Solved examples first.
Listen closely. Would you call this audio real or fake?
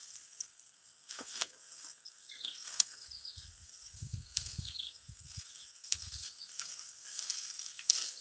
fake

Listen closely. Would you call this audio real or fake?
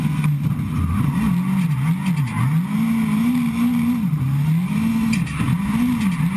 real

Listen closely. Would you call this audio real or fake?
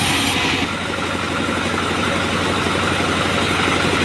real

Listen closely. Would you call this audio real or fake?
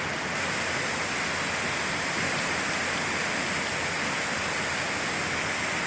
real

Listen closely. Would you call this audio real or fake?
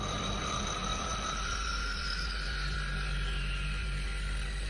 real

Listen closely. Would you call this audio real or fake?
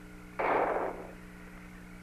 real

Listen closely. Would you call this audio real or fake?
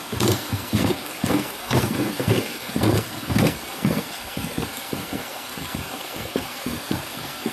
fake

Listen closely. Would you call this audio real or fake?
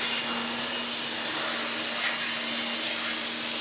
real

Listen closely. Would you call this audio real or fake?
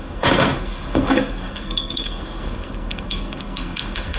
fake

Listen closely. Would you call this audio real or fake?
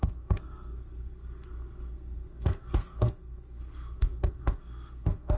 fake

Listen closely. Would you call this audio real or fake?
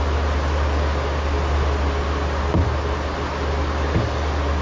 real